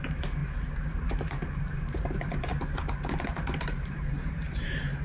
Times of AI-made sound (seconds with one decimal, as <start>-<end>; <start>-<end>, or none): 0.0-2.5; 3.6-5.0